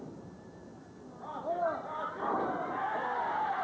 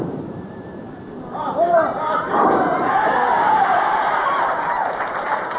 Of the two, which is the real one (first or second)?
first